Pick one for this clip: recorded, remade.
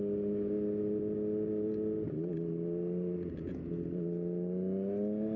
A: recorded